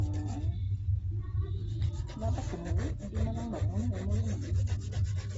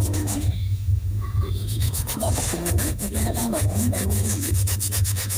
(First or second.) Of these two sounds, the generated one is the second